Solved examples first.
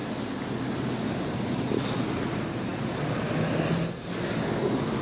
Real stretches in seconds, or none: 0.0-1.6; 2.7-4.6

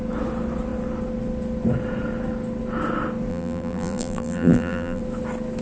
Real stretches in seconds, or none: 0.0-3.3; 5.0-5.6

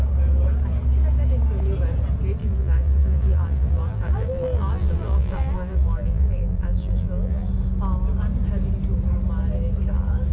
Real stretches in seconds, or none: 0.0-2.4; 7.5-10.3